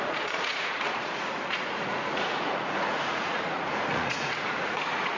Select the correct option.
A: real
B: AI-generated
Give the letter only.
B